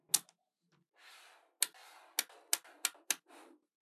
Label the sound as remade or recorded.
recorded